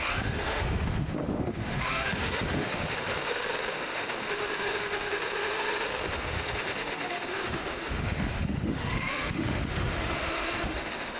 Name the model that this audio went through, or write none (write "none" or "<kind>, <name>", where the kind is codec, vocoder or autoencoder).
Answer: autoencoder, DAC-VAE